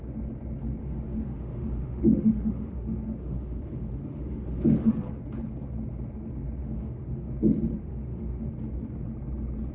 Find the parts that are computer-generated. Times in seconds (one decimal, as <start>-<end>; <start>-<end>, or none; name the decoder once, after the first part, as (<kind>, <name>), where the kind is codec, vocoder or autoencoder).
0.8-4.9 (autoencoder, DAC-VAE); 6.6-7.3; 7.8-8.5